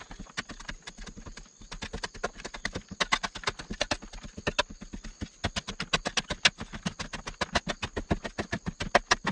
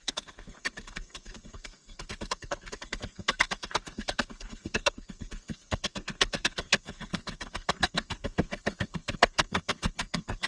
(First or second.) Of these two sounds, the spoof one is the second